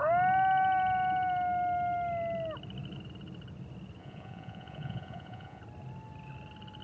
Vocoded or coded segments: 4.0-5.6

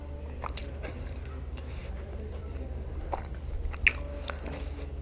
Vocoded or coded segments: 0.6-3.6

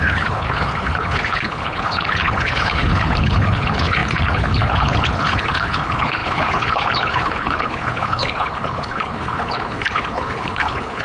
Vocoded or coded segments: 0.0-11.0

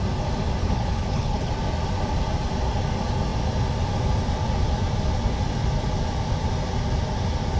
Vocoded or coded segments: 0.6-1.5

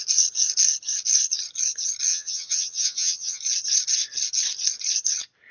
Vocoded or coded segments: 2.1-3.4

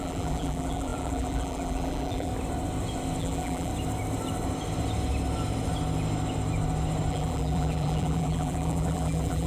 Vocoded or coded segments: 0.0-2.3; 3.2-3.7; 7.1-9.5